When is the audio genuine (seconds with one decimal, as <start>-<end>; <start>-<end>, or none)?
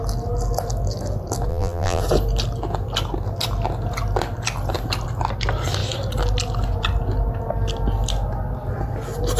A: 0.0-1.5; 2.0-9.4